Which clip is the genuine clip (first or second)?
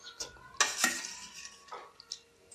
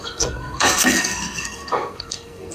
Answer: first